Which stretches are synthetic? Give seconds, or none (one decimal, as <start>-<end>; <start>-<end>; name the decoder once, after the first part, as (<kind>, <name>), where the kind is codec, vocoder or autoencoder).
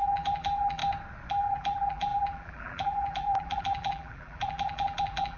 0.0-0.8 (vocoder, BigVGAN v2); 1.3-5.4